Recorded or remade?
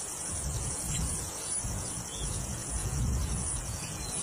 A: remade